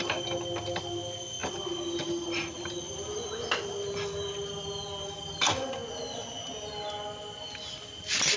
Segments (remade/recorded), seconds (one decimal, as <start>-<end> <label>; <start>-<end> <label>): 0.0-8.4 recorded